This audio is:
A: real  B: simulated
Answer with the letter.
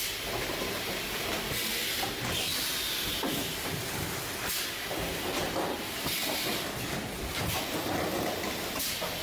A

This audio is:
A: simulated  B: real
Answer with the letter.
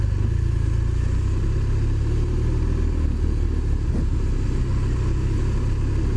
B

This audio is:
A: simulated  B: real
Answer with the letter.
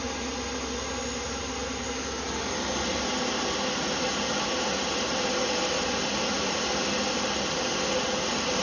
B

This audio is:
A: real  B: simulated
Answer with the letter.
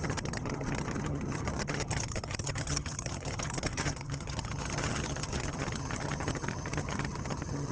B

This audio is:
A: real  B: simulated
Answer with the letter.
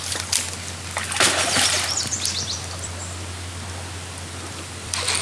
A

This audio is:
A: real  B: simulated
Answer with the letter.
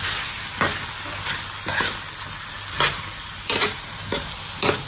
A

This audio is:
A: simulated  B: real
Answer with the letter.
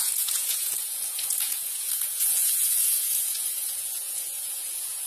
A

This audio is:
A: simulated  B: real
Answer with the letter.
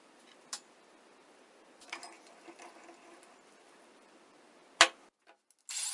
B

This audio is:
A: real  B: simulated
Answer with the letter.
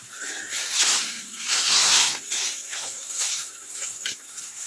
B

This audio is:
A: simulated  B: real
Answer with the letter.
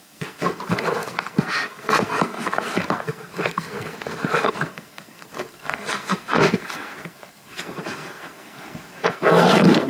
A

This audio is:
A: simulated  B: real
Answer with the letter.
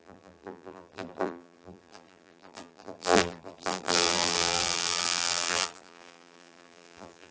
A